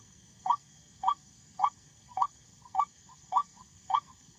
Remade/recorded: remade